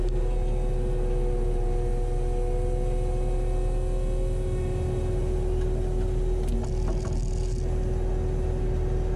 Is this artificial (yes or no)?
no